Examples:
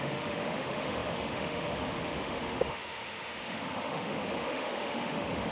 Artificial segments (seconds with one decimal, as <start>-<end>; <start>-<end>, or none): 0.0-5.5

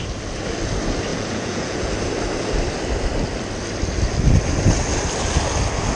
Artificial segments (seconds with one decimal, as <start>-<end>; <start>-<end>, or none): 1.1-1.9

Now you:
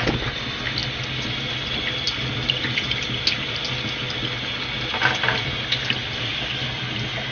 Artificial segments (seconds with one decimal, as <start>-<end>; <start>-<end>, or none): none